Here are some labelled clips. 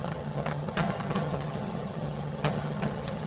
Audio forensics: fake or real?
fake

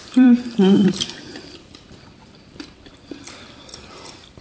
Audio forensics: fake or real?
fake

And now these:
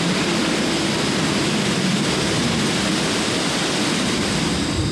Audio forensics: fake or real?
real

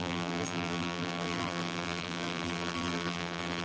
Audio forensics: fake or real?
fake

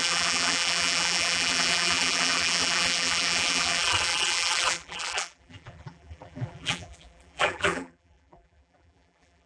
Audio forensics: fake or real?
fake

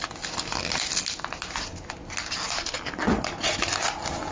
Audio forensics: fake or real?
real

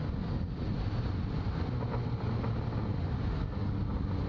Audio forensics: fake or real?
real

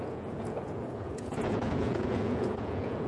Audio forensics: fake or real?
fake